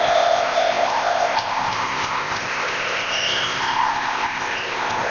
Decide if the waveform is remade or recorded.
remade